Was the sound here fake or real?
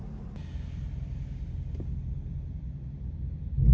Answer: real